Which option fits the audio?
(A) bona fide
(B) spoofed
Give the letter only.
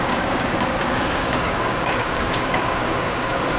B